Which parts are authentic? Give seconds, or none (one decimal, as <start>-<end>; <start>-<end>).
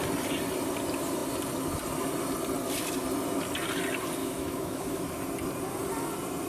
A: 0.0-4.2; 5.0-6.5